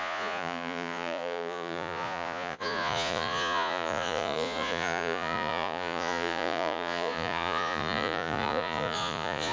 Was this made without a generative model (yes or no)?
no